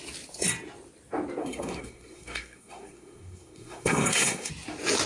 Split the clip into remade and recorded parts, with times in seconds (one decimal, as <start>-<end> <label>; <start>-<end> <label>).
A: 0.0-1.4 recorded; 1.4-4.5 remade; 4.5-5.1 recorded